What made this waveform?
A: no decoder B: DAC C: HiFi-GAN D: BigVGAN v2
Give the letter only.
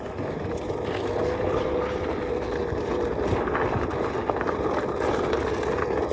A